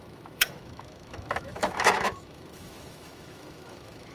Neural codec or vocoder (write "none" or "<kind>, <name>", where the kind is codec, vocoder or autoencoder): autoencoder, DAC-VAE